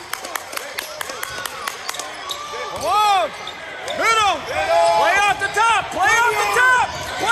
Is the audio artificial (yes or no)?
no